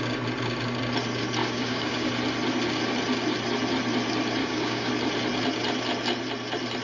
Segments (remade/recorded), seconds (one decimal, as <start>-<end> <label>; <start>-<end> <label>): 0.0-1.4 recorded; 1.4-2.1 remade; 2.1-4.4 recorded; 4.4-4.9 remade; 4.9-6.8 recorded